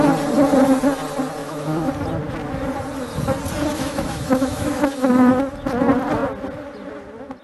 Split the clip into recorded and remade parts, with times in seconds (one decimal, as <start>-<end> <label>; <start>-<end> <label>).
0.0-1.4 recorded; 1.4-1.9 remade; 1.9-3.7 recorded; 3.7-5.3 remade; 5.3-7.4 recorded